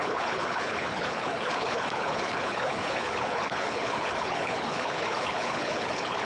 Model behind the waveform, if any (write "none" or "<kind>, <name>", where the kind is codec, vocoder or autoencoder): codec, HILCodec